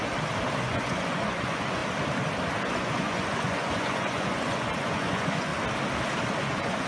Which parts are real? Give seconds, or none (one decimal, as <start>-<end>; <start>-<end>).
0.0-0.6; 1.8-2.7; 5.5-6.4